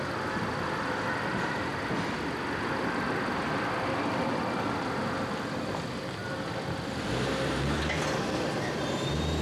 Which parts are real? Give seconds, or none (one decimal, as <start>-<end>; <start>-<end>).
0.0-9.4